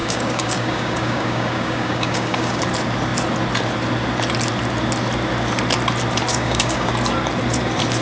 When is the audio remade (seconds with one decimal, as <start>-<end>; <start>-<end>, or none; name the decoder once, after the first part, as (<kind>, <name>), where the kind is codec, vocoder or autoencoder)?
0.0-2.6 (codec, DAC); 6.3-6.9